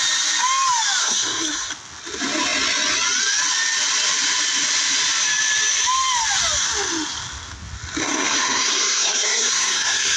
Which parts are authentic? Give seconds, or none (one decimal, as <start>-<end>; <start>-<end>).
0.0-1.0; 1.7-8.0